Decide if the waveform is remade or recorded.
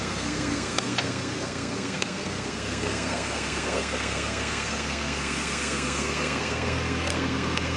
remade